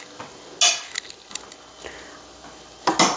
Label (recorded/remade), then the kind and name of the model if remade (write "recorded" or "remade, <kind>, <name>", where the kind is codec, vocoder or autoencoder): recorded